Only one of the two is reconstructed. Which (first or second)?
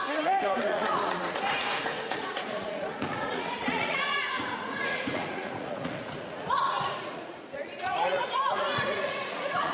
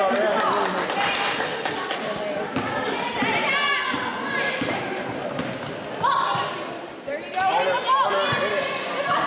first